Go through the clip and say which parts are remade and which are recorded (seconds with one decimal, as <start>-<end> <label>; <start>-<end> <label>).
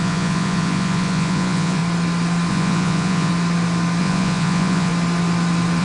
0.0-1.8 remade; 1.8-2.5 recorded; 2.5-3.3 remade; 3.3-4.0 recorded; 4.0-4.9 remade; 4.9-5.8 recorded